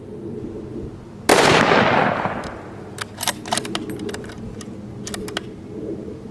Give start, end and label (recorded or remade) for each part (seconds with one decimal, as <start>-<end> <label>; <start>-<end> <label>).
0.0-6.3 recorded